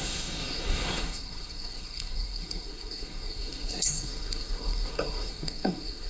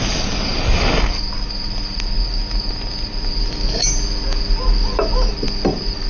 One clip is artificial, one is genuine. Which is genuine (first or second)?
second